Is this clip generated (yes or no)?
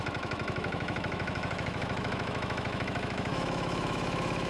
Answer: yes